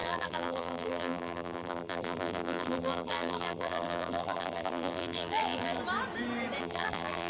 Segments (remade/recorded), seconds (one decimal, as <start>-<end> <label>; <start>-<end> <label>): 0.0-5.8 remade; 5.8-6.6 recorded; 6.6-7.3 remade